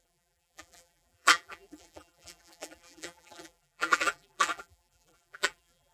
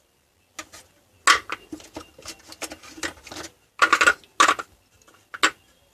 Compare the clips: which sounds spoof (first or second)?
first